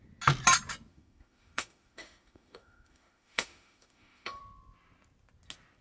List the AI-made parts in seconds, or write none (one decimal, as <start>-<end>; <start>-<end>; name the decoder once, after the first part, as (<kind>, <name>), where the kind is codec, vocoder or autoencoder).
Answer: 0.9-4.4 (autoencoder, DAC-VAE)